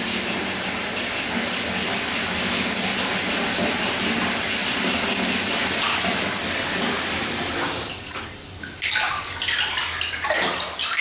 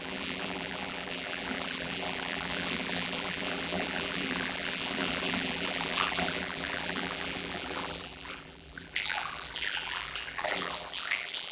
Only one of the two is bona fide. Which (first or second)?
first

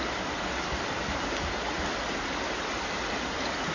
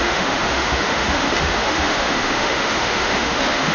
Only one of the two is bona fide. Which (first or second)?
first